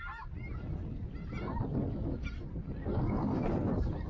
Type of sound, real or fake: real